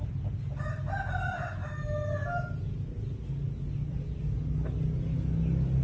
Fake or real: real